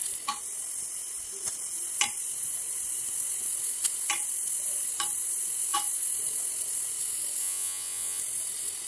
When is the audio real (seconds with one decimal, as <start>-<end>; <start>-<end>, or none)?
0.0-7.4; 8.2-8.9

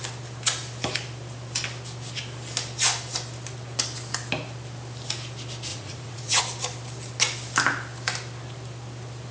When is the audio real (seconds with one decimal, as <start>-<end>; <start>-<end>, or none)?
0.0-5.7; 6.4-9.3